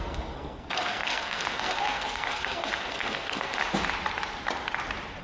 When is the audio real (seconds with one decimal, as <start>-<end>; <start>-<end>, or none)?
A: 3.6-5.2